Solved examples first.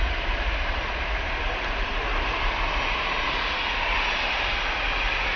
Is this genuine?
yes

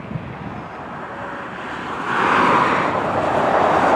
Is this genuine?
yes